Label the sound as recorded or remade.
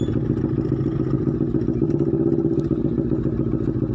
recorded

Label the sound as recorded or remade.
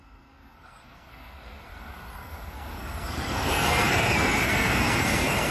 remade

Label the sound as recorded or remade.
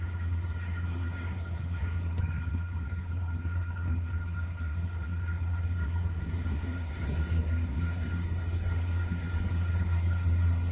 remade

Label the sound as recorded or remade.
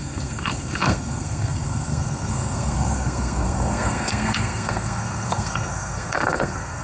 remade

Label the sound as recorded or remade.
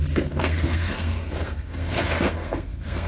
remade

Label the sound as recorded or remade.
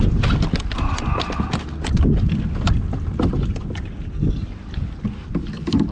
recorded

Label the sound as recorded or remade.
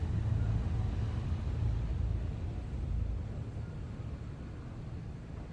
recorded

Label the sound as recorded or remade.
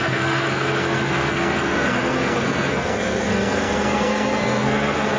remade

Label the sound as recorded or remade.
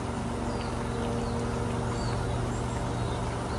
recorded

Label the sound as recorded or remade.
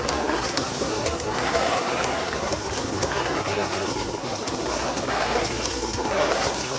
remade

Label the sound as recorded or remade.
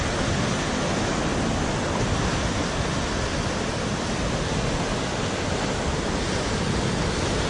recorded